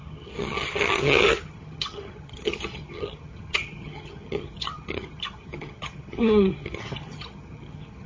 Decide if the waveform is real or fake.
fake